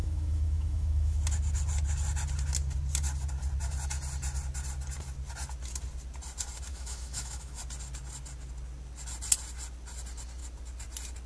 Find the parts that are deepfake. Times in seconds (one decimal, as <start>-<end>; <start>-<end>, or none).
0.0-1.2; 6.7-7.6